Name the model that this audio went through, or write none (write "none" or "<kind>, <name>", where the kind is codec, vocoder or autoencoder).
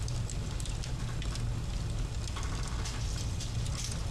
none